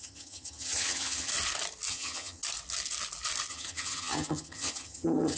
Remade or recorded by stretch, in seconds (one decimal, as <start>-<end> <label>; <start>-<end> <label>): 0.0-1.3 remade; 1.3-1.9 recorded; 1.9-2.4 remade; 2.4-3.5 recorded; 3.5-5.4 remade